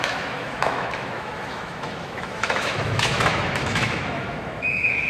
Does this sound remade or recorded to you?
remade